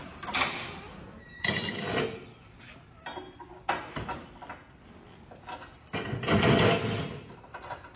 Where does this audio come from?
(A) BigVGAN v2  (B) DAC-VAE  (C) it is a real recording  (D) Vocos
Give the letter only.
C